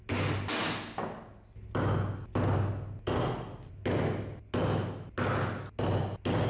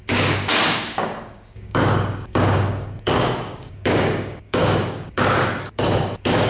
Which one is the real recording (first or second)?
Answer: first